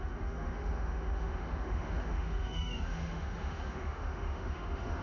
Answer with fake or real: fake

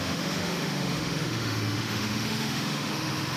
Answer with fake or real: fake